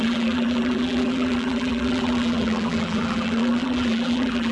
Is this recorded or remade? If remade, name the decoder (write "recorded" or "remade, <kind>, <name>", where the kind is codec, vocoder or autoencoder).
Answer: remade, vocoder, BigVGAN v2